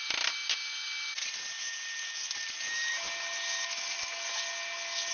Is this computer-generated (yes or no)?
no